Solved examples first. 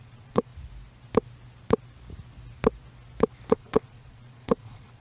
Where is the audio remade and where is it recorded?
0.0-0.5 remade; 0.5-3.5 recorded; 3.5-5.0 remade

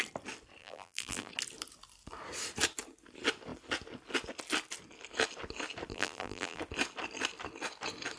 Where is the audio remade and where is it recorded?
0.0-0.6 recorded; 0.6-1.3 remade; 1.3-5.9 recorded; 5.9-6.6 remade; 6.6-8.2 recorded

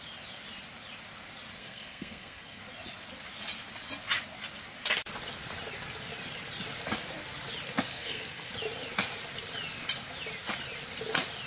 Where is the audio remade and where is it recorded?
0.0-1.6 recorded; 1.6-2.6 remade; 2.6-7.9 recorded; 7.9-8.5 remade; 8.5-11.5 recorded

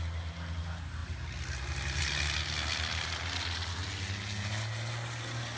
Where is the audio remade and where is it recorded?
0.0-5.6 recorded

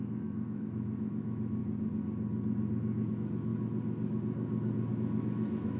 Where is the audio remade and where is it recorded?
0.0-1.6 remade; 1.6-3.1 recorded; 3.1-3.5 remade; 3.5-4.9 recorded; 4.9-5.8 remade

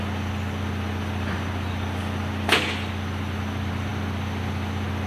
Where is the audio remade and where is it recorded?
0.0-5.1 recorded